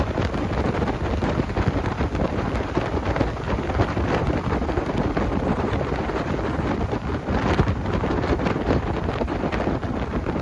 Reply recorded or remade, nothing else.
recorded